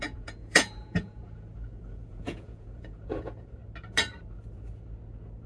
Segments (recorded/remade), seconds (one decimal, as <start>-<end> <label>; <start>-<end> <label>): 0.0-3.6 remade; 3.6-5.5 recorded